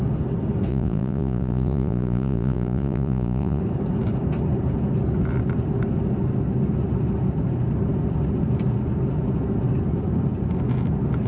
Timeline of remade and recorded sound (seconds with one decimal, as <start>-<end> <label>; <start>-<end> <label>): 0.0-0.7 recorded; 0.7-3.6 remade; 3.6-11.3 recorded